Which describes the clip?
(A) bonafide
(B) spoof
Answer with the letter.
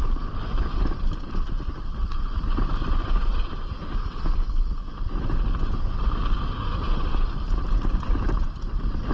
A